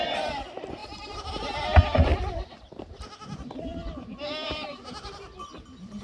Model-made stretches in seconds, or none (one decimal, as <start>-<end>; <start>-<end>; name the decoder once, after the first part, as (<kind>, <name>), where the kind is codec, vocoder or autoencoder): none